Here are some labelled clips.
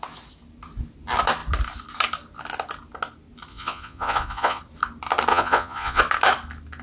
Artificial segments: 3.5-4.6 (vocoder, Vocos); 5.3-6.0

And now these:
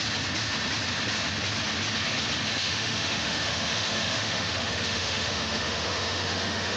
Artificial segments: 2.5-6.8 (autoencoder, DAC-VAE)